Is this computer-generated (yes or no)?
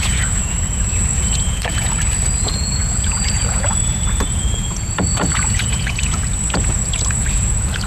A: yes